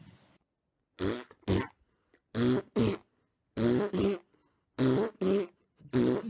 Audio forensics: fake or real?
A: real